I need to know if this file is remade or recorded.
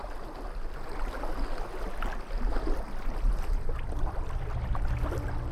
recorded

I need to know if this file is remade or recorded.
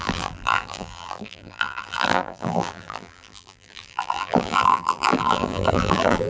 remade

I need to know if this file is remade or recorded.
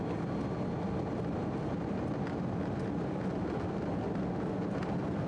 recorded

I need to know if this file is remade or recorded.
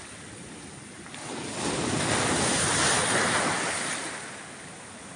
recorded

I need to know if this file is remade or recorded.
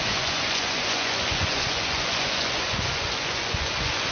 remade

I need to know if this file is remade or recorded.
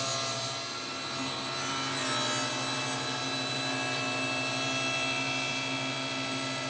recorded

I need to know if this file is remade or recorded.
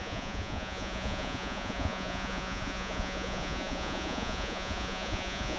remade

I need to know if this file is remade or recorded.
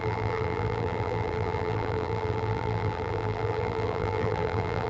remade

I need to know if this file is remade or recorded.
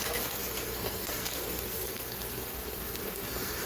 remade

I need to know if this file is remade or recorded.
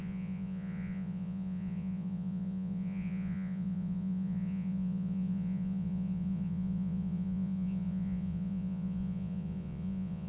remade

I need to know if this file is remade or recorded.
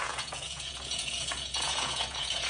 remade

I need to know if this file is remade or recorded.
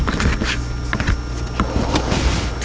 recorded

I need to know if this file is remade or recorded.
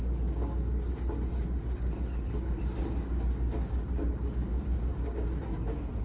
remade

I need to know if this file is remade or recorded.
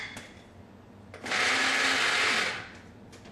recorded